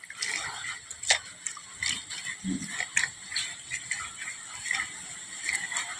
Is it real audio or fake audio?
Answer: real